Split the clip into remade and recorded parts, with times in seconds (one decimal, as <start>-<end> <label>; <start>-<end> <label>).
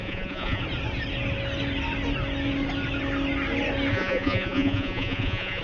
0.0-0.6 remade; 0.6-3.9 recorded; 3.9-5.6 remade